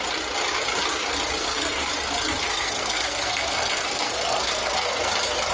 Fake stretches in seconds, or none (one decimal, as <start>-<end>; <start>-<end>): 1.4-1.9; 2.5-5.1